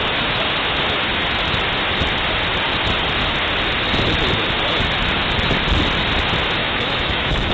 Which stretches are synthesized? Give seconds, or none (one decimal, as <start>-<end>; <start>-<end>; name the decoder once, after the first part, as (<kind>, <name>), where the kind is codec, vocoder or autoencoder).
6.6-7.5 (autoencoder, DAC-VAE)